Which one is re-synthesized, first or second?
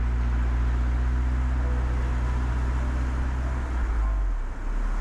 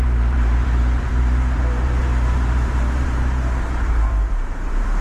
second